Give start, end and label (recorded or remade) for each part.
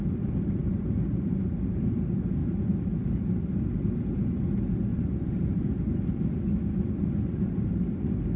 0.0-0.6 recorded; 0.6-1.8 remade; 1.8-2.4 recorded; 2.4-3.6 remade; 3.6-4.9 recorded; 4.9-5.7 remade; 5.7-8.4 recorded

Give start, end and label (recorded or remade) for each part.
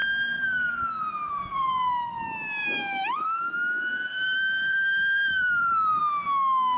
0.0-1.6 remade; 1.6-2.6 recorded; 2.6-3.4 remade; 3.4-3.9 recorded; 3.9-6.0 remade; 6.0-6.8 recorded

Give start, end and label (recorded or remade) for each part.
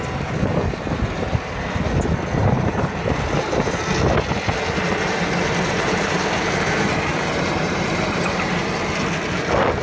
0.0-2.4 recorded; 2.4-3.8 remade; 3.8-4.8 recorded; 4.8-8.5 remade; 8.5-9.8 recorded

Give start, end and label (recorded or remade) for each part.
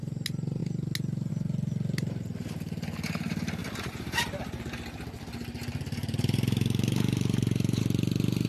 0.0-3.6 recorded; 3.6-4.6 remade; 4.6-5.7 recorded; 5.7-7.8 remade; 7.8-8.5 recorded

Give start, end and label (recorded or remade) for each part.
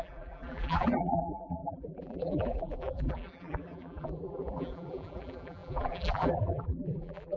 0.0-7.4 remade